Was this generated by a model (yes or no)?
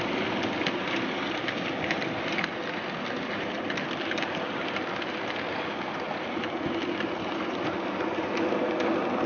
no